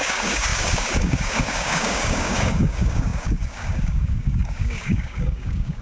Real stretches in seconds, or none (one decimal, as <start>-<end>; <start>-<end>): none